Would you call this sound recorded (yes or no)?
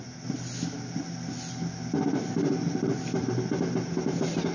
yes